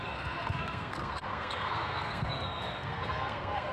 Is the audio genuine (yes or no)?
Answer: no